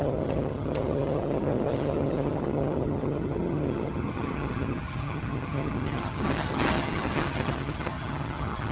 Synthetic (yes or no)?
yes